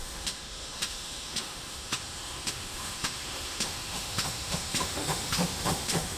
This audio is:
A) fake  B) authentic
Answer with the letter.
A